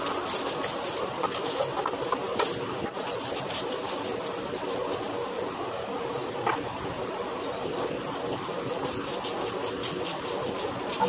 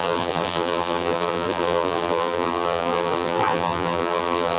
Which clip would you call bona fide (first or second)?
first